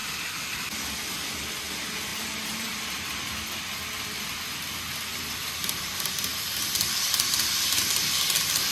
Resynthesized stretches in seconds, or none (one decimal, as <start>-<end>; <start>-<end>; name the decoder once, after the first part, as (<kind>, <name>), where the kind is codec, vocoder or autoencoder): 0.0-1.1 (vocoder, BigVGAN v2); 2.1-3.3; 5.1-7.8